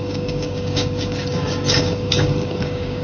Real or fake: fake